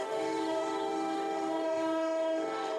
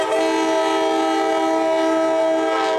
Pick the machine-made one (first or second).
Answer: first